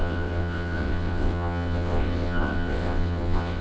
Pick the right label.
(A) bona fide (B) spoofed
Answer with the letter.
B